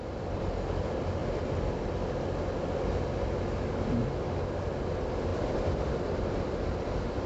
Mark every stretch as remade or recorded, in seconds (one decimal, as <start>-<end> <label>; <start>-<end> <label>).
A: 0.0-5.3 recorded; 5.3-7.3 remade